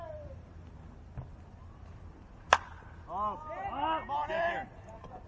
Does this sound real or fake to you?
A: real